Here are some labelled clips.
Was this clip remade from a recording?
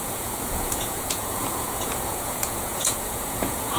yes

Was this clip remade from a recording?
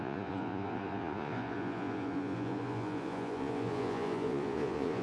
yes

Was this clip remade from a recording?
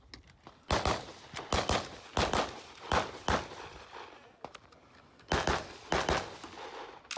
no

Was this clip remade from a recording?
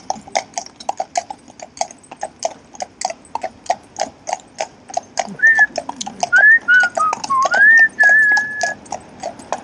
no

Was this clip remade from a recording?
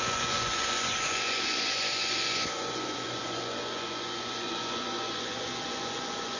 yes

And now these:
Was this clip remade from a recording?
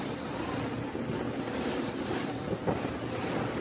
no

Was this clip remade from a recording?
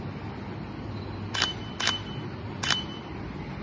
no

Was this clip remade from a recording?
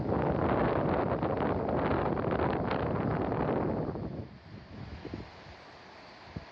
no